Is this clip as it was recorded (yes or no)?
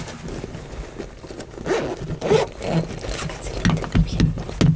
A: yes